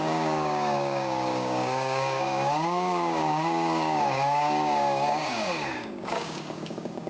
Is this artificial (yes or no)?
yes